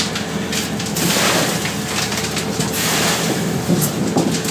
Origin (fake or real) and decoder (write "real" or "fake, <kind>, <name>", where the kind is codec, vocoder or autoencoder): real